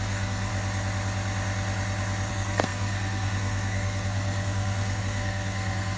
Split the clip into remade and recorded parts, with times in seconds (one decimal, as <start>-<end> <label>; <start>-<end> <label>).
0.0-0.5 remade; 0.5-2.3 recorded; 2.3-6.0 remade